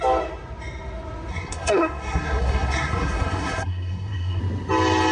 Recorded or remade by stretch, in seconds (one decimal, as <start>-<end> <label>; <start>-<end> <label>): 0.0-1.3 recorded; 1.3-4.4 remade; 4.4-5.1 recorded